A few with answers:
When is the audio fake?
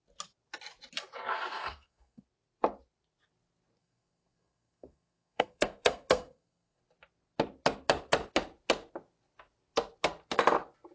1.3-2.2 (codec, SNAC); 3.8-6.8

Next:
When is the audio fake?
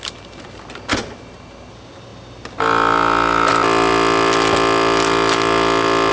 none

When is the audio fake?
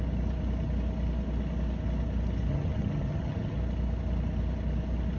2.5-3.6 (vocoder, HiFi-GAN)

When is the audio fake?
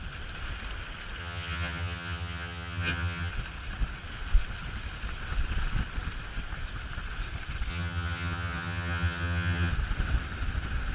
1.2-3.3 (vocoder, HiFi-GAN); 7.7-9.7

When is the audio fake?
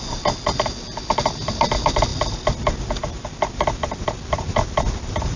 none